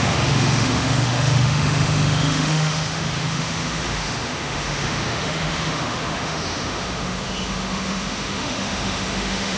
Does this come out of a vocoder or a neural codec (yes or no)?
yes